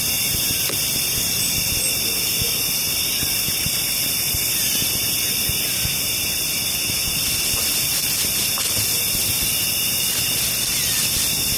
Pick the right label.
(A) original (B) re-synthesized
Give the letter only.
A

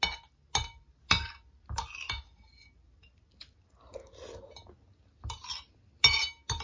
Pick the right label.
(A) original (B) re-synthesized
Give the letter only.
A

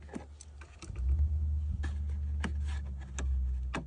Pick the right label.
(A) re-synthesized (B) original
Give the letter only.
B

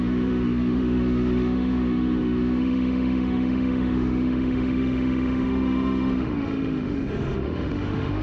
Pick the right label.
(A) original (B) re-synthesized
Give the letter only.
B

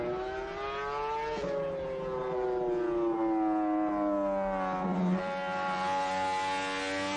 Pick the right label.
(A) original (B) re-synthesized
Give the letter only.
A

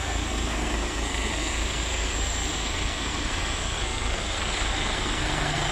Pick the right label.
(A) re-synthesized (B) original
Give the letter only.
A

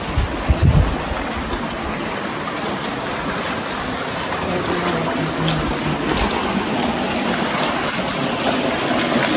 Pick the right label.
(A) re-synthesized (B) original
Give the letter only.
B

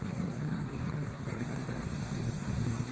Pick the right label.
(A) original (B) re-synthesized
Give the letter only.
B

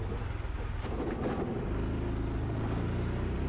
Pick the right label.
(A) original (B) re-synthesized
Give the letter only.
A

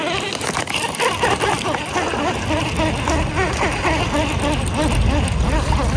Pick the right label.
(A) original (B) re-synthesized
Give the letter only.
A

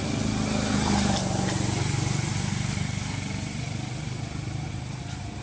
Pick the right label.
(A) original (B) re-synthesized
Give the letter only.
A